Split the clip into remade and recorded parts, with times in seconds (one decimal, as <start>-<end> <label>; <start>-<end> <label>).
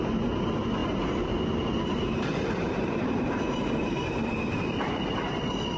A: 0.0-5.8 remade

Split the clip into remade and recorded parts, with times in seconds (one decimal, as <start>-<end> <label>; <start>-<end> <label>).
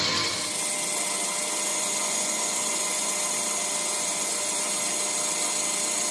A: 0.0-1.7 recorded; 1.7-3.1 remade; 3.1-3.9 recorded; 3.9-4.7 remade; 4.7-6.1 recorded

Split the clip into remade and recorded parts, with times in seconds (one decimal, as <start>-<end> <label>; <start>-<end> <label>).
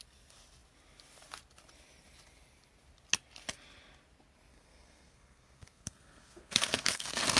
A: 0.0-4.5 recorded; 4.5-7.4 remade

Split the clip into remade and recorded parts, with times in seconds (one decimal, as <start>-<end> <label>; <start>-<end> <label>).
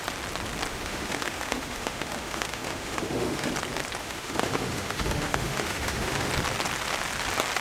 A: 0.0-0.7 recorded; 0.7-3.5 remade; 3.5-4.0 recorded; 4.0-6.3 remade; 6.3-7.6 recorded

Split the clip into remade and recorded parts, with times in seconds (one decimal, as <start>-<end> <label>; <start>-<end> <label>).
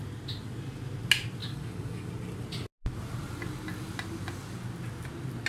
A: 0.0-1.4 recorded; 1.4-2.1 remade; 2.1-5.5 recorded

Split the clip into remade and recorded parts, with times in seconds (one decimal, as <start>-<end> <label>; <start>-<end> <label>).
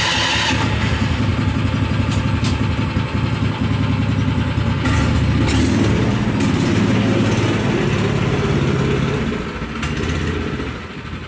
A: 0.0-11.3 recorded